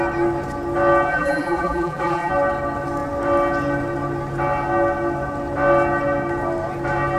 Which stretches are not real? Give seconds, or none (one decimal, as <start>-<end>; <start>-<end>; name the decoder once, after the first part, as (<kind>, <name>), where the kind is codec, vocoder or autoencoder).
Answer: 1.1-2.3 (vocoder, BigVGAN v2)